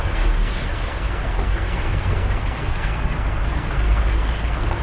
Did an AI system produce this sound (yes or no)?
yes